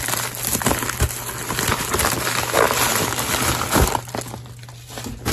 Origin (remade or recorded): recorded